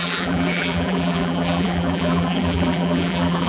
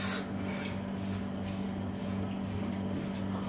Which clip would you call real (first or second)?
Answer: second